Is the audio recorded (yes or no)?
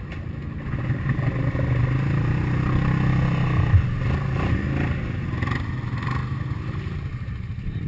yes